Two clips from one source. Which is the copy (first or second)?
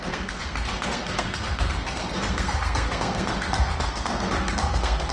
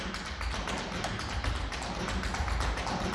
first